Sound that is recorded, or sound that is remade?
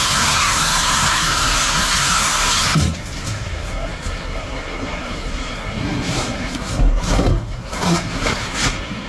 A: remade